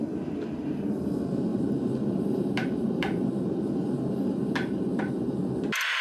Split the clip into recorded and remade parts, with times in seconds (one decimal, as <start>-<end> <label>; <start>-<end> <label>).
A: 0.0-1.5 recorded; 1.5-5.1 remade; 5.1-6.0 recorded